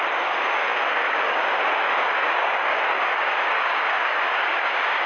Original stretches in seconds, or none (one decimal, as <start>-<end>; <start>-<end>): none